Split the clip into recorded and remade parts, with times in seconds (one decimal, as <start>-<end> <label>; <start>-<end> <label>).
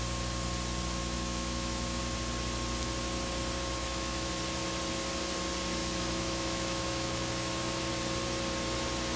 0.0-1.0 recorded; 1.0-2.0 remade; 2.0-3.8 recorded; 3.8-4.3 remade; 4.3-5.8 recorded; 5.8-7.8 remade; 7.8-9.2 recorded